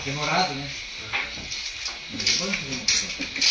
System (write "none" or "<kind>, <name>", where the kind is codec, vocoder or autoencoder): none